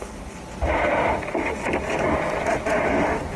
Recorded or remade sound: recorded